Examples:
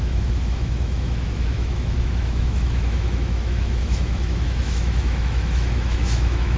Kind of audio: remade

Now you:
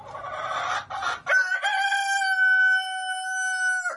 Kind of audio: recorded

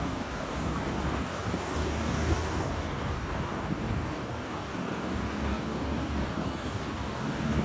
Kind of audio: remade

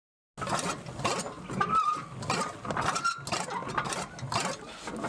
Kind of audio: recorded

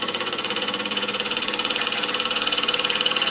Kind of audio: remade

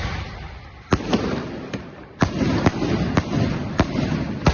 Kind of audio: remade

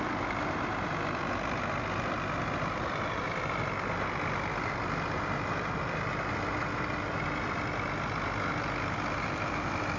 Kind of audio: recorded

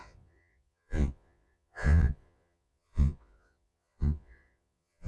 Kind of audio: remade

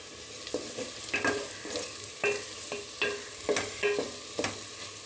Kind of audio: recorded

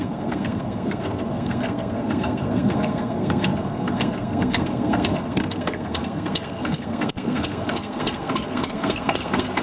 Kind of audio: remade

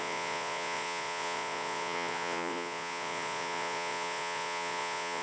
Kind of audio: remade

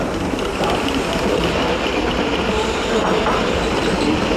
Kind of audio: recorded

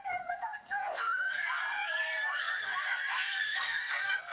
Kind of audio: remade